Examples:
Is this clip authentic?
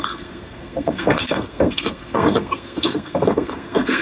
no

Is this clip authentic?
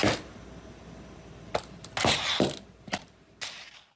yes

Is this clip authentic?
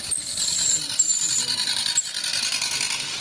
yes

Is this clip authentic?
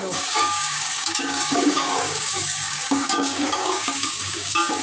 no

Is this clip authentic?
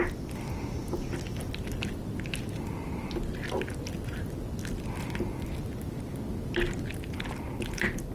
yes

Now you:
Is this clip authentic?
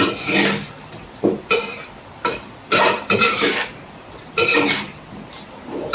no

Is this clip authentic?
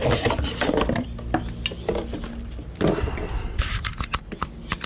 yes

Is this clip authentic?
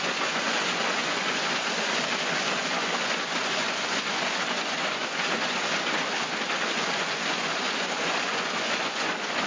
no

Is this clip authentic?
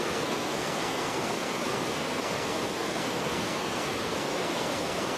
no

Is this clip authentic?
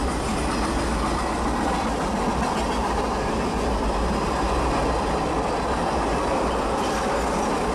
yes